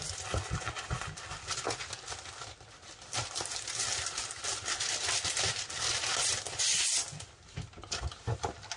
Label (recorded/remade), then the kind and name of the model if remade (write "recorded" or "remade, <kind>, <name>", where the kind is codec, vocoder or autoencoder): recorded